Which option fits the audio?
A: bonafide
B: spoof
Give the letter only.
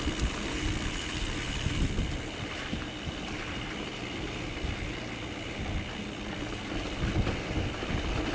A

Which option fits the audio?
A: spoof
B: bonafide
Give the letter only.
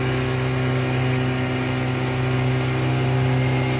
B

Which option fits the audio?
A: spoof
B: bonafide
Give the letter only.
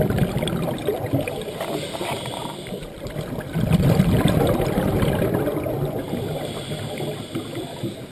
B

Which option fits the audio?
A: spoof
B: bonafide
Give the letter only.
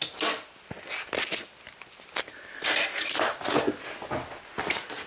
B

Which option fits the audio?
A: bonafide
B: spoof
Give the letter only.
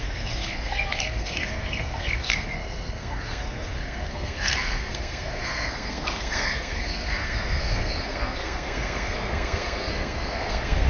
B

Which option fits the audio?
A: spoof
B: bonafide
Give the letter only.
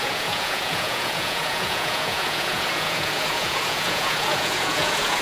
A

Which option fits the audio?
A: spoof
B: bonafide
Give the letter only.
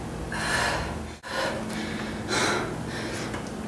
B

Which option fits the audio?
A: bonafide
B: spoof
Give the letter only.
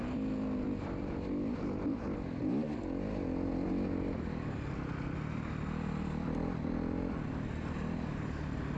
A